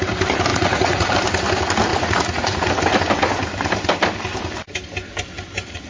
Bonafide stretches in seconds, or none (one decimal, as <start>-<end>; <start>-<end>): 0.0-0.5; 1.1-1.9; 2.7-5.9